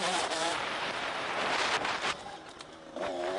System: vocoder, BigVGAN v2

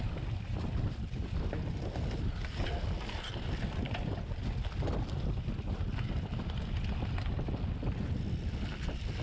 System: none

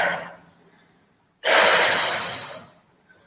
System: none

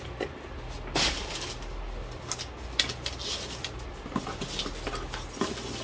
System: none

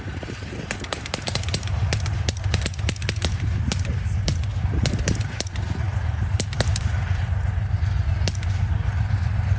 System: vocoder, BigVGAN v2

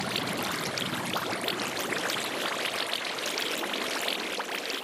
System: none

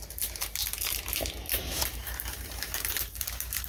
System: vocoder, BigVGAN v2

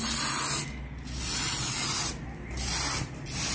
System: none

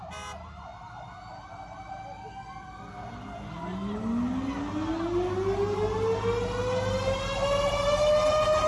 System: none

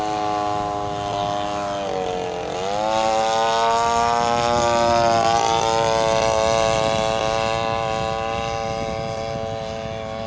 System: none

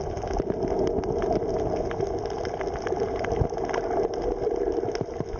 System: none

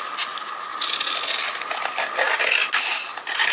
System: none